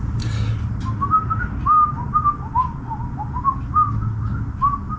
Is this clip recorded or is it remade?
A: recorded